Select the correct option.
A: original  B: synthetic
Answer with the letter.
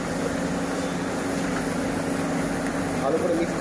A